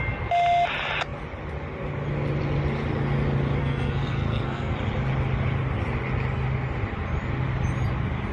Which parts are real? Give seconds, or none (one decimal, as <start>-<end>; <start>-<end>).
0.0-3.6; 4.7-8.3